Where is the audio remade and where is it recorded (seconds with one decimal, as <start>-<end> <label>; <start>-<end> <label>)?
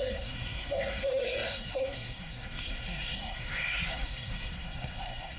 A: 0.0-5.4 remade